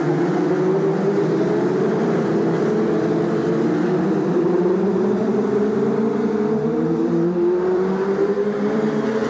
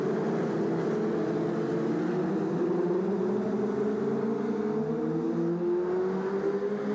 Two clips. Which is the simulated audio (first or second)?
first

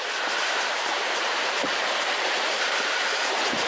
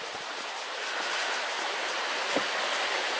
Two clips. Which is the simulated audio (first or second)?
first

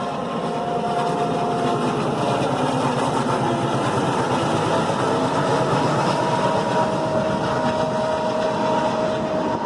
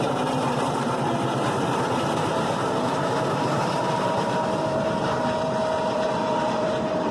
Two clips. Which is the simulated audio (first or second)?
second